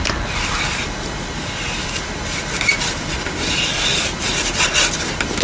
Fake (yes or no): no